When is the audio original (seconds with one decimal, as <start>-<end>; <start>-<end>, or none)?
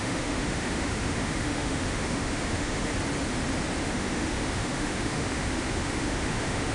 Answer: 2.9-3.8